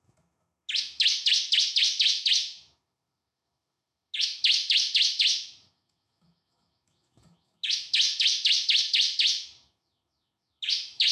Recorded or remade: remade